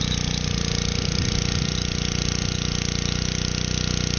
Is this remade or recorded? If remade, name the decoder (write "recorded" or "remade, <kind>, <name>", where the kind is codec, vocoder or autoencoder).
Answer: recorded